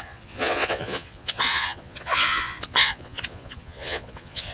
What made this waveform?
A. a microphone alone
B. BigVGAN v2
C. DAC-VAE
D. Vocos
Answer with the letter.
D